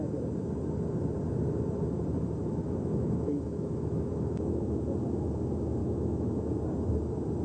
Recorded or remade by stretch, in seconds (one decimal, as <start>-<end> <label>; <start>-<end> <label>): 0.0-2.4 recorded; 2.4-4.8 remade; 4.8-5.8 recorded; 5.8-6.3 remade; 6.3-7.4 recorded